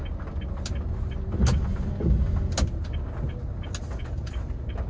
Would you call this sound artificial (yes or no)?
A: no